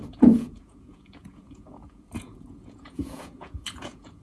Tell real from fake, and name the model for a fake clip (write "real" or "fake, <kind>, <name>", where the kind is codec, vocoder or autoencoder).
fake, vocoder, Vocos